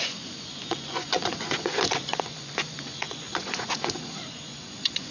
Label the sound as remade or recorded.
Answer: remade